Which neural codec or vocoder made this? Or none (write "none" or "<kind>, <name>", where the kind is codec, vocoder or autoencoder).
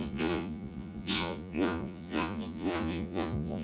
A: vocoder, Vocos